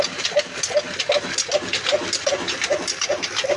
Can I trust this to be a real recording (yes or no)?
yes